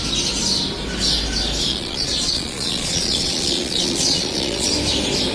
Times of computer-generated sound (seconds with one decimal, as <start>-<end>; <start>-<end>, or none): 1.7-4.7